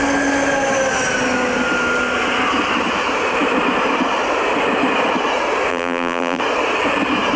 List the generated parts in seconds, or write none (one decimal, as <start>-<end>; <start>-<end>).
5.7-6.4